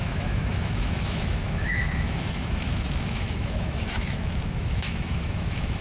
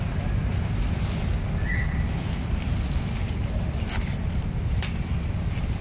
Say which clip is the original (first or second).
second